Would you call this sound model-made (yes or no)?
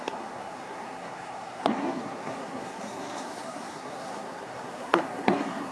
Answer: yes